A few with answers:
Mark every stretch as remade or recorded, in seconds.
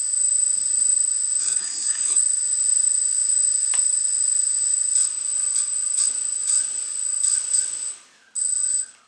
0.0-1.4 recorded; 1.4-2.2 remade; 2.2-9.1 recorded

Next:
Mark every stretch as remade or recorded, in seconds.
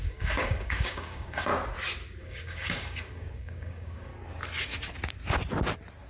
0.0-1.5 remade; 1.5-2.2 recorded; 2.2-4.1 remade; 4.1-6.1 recorded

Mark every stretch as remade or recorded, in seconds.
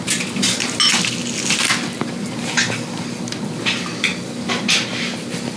0.0-5.6 recorded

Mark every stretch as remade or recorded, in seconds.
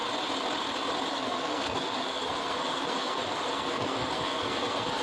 0.0-1.1 recorded; 1.1-5.0 remade